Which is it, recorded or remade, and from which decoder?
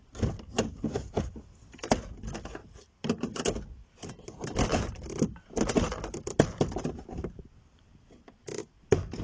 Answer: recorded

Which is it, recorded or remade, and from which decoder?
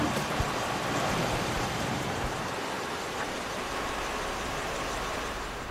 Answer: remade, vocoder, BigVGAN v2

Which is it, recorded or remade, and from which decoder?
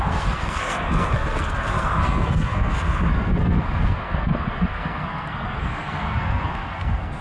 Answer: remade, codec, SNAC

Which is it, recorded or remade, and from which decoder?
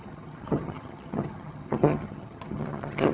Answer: remade, vocoder, HiFi-GAN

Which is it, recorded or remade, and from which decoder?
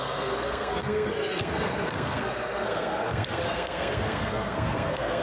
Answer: remade, codec, SNAC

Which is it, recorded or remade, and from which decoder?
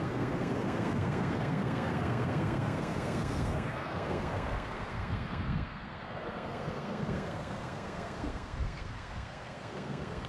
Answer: remade, codec, SNAC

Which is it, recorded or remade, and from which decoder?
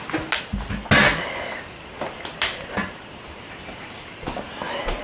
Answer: recorded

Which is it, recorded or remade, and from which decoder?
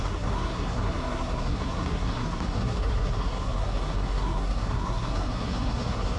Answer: remade, codec, SNAC